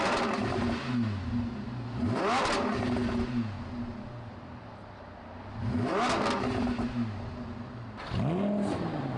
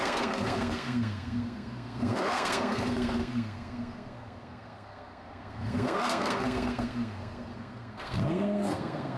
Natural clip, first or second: first